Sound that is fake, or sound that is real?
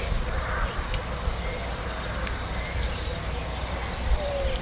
real